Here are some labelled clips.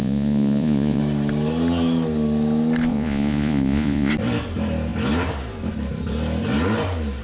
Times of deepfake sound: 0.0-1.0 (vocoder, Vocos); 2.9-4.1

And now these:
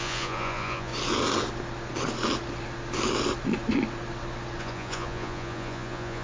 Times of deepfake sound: 0.0-0.9 (vocoder, Vocos); 4.6-6.2

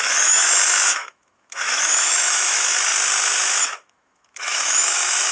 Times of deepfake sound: 0.0-2.9 (autoencoder, DAC-VAE); 3.6-5.3